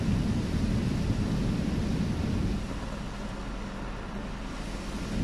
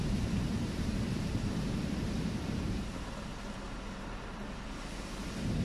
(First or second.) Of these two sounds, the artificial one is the second